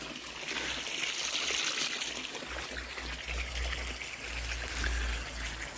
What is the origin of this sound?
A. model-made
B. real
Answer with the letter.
B